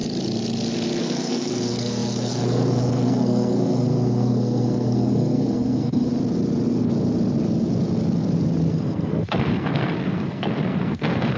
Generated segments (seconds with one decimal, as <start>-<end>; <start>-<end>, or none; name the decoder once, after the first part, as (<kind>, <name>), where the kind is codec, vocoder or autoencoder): 1.0-6.1 (codec, SNAC); 8.7-11.4